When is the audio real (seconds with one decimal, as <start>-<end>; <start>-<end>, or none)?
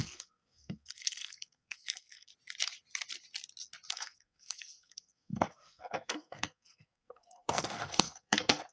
2.3-3.9